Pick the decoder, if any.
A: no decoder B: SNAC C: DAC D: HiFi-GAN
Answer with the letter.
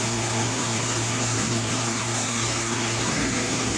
B